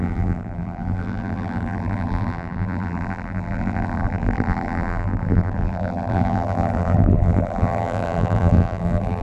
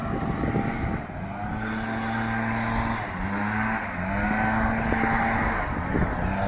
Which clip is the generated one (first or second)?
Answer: first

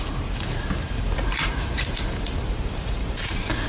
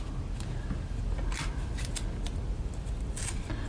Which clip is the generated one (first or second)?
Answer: first